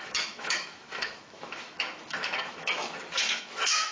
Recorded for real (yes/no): no